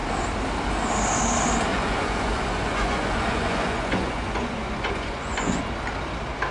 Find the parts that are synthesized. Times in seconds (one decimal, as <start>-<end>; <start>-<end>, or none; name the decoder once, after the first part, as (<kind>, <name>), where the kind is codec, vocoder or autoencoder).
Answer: 1.7-5.6 (vocoder, Vocos)